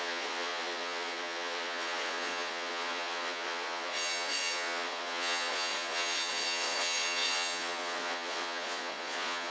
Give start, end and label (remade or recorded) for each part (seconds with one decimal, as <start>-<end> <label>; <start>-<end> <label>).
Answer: 0.0-9.5 remade